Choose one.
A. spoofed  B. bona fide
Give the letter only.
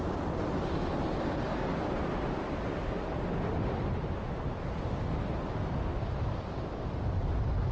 B